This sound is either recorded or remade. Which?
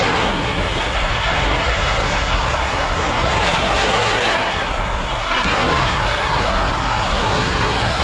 remade